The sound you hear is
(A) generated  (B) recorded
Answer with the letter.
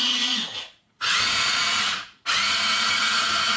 A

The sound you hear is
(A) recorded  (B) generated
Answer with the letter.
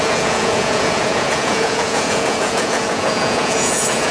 B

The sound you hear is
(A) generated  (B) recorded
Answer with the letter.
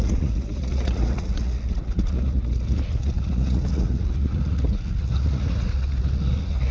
A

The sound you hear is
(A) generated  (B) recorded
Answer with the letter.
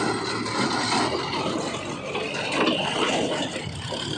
B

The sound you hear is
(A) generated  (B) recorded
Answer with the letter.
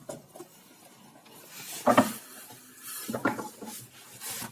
B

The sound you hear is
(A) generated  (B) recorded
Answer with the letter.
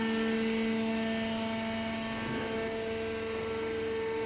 B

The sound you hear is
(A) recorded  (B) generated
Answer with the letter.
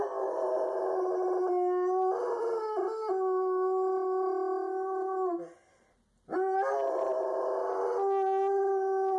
A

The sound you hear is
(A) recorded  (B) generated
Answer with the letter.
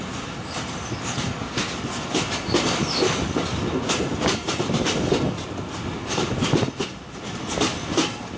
A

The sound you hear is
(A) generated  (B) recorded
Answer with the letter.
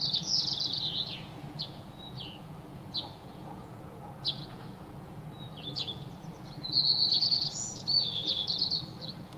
A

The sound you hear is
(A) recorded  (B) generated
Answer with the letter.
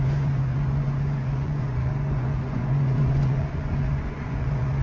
B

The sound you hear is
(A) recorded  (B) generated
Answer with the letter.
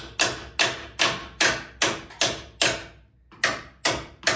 A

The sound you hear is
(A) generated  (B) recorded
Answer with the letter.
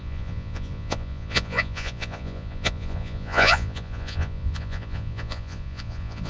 A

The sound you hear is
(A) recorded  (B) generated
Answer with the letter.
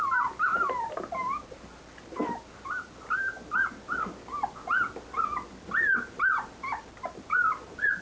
A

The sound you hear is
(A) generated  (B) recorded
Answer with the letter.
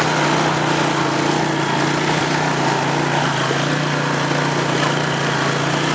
B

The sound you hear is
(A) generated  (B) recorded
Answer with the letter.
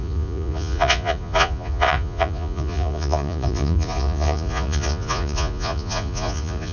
A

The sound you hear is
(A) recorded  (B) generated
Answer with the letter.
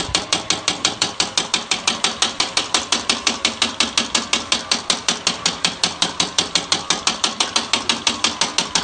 A